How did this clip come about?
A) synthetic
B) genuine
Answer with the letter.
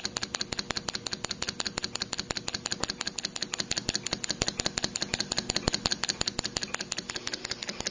B